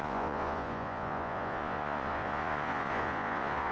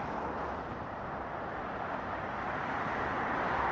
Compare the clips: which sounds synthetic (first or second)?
first